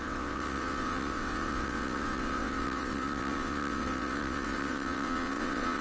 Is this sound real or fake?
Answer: fake